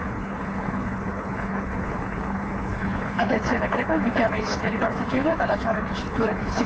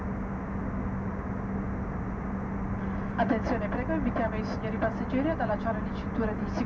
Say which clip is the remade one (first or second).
first